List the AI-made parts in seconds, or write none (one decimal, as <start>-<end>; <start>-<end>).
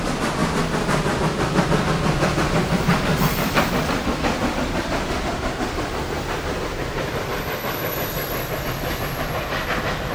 2.9-4.0